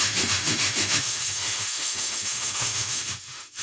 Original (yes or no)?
no